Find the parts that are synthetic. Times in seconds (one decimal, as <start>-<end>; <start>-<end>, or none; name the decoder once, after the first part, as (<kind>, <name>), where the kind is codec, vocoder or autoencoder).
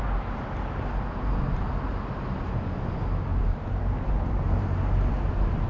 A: 3.3-5.3 (vocoder, BigVGAN v2)